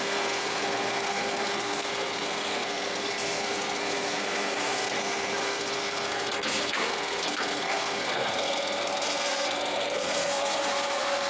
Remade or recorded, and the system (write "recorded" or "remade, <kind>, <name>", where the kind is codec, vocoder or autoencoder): remade, codec, SNAC